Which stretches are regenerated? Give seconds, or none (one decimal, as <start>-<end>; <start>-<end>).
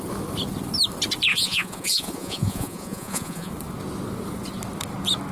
1.3-3.5